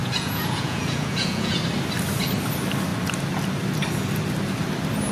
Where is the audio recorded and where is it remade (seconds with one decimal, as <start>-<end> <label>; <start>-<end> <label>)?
0.0-1.6 remade; 1.6-5.1 recorded